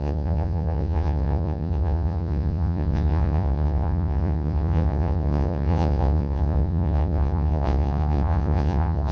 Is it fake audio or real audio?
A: fake